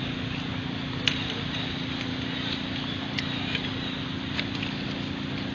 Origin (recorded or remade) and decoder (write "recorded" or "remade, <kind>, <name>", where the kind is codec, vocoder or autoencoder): recorded